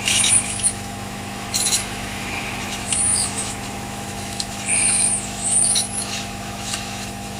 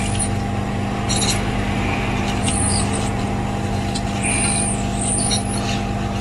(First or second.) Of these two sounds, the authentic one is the second